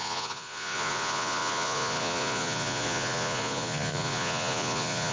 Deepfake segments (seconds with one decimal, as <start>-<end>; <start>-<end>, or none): 0.0-5.1